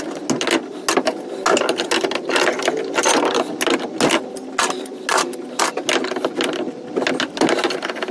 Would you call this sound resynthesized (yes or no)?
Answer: no